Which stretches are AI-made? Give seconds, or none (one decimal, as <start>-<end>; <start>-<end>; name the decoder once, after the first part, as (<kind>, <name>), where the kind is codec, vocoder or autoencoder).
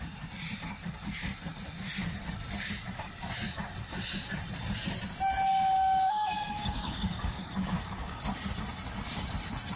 5.5-8.2 (codec, DAC)